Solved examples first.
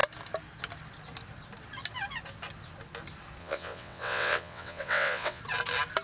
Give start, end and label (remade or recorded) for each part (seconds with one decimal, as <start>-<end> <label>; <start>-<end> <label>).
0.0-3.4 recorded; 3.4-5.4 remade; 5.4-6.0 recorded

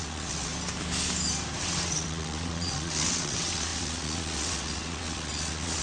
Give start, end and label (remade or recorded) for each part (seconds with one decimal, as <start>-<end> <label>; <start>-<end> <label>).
0.0-0.5 remade; 0.5-1.6 recorded; 1.6-5.8 remade

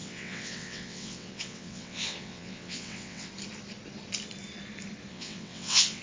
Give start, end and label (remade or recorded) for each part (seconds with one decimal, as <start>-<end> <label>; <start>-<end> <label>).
0.0-3.3 remade; 3.3-5.1 recorded; 5.1-6.0 remade